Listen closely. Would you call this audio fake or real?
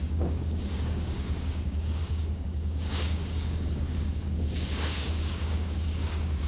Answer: fake